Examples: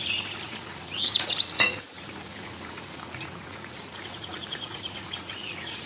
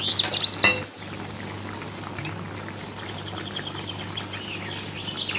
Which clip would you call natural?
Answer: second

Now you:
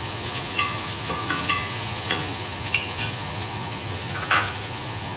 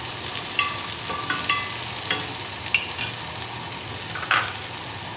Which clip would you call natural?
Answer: second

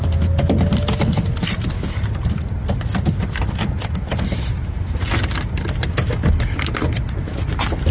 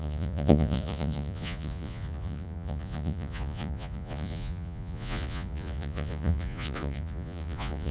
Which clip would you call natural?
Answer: first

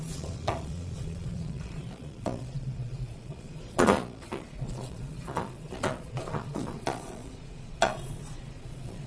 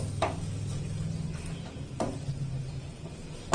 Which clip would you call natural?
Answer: second